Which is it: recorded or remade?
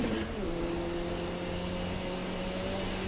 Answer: recorded